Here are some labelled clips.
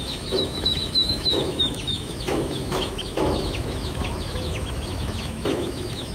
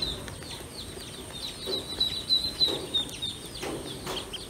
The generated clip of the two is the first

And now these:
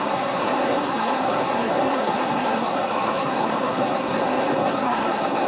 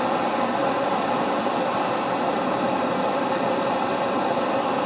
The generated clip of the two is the first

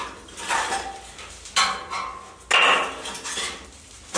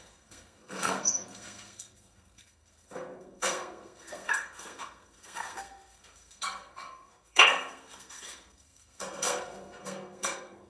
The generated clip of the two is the second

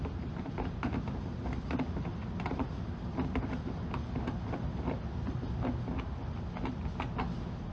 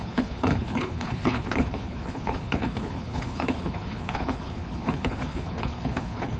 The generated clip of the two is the second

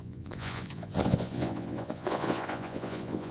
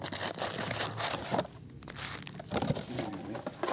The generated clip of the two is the first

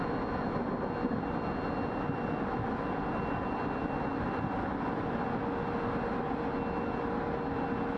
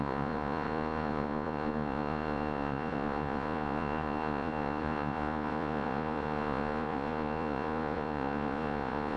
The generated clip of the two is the second